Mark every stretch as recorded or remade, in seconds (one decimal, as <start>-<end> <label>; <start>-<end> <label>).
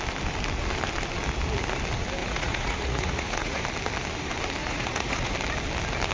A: 0.0-2.2 recorded; 2.2-3.6 remade; 3.6-4.6 recorded; 4.6-5.3 remade; 5.3-6.1 recorded